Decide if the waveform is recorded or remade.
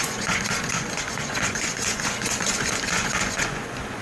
remade